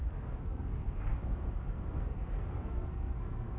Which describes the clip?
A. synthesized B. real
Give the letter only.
A